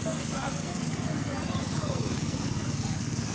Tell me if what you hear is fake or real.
fake